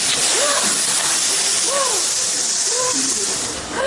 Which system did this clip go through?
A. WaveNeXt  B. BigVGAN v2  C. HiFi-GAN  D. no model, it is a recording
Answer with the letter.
B